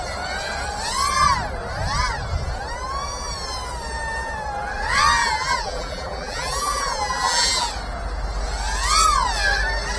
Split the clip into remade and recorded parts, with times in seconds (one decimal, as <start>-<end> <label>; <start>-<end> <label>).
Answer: 0.0-5.2 recorded; 5.2-7.7 remade; 7.7-10.0 recorded